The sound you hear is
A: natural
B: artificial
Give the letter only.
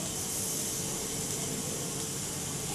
A